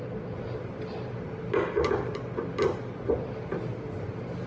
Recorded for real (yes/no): yes